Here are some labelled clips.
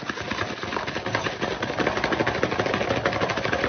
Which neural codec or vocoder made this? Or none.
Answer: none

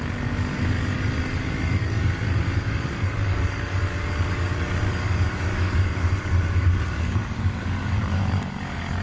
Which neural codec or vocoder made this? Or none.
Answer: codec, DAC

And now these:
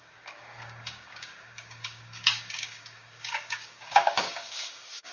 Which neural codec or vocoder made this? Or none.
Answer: codec, DAC